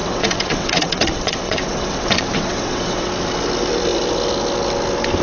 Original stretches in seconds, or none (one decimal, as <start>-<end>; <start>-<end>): 3.1-5.2